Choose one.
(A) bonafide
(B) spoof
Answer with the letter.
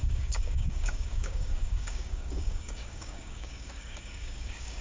B